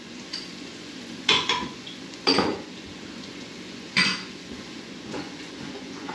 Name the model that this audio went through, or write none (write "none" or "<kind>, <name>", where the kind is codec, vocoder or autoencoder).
vocoder, Vocos